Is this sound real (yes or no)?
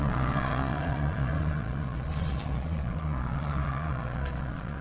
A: no